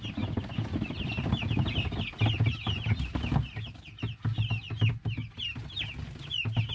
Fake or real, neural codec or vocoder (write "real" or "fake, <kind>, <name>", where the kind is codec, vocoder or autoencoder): real